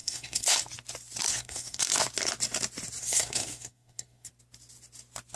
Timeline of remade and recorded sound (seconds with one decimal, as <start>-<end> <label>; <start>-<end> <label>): 0.0-0.6 remade; 0.6-1.3 recorded; 1.3-1.9 remade; 1.9-3.0 recorded; 3.0-4.3 remade; 4.3-5.4 recorded

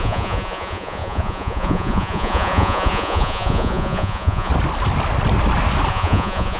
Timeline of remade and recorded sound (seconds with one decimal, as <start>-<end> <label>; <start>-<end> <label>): 0.0-4.5 remade; 4.5-5.9 recorded; 5.9-6.6 remade

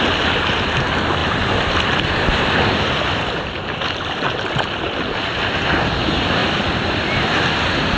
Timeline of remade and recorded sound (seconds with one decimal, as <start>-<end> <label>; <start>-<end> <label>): 0.0-1.2 recorded; 1.2-5.2 remade; 5.2-6.4 recorded; 6.4-7.5 remade; 7.5-8.0 recorded

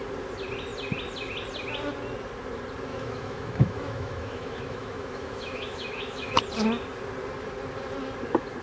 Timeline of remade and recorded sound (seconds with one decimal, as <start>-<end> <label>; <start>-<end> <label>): 0.0-2.9 recorded; 2.9-6.4 remade; 6.4-8.6 recorded